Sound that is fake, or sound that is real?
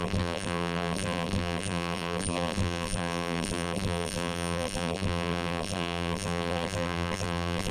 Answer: fake